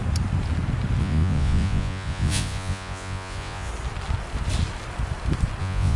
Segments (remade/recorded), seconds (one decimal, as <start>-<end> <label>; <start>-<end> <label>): 0.0-1.0 recorded; 1.0-3.7 remade; 3.7-5.6 recorded; 5.6-6.0 remade